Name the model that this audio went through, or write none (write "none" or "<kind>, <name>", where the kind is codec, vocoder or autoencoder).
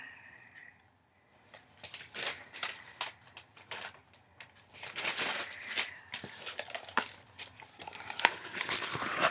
vocoder, BigVGAN v2